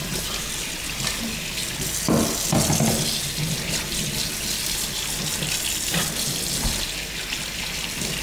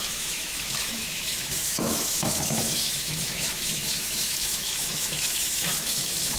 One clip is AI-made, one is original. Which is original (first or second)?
first